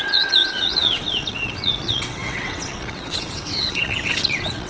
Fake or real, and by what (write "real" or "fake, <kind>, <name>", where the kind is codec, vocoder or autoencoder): fake, vocoder, WaveNeXt